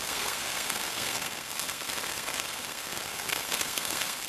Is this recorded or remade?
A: remade